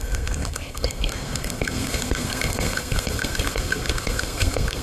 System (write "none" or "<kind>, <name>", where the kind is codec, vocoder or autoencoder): codec, SNAC